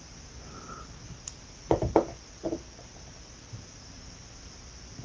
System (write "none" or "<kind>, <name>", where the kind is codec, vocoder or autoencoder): none